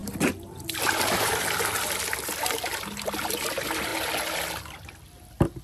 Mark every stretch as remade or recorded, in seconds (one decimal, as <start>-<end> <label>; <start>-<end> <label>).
0.0-5.6 recorded